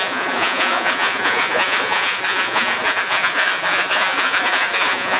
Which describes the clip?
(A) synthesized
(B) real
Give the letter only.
A